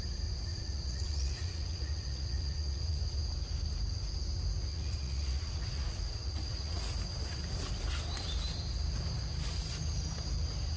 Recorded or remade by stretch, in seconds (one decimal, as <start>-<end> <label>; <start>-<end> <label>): 0.0-0.5 recorded; 0.5-3.0 remade; 3.0-4.7 recorded; 4.7-6.9 remade; 6.9-10.8 recorded